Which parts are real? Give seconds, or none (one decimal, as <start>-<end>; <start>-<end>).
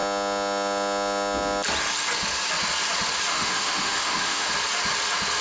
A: 0.0-3.3; 4.5-5.4